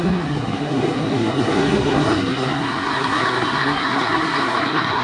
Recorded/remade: remade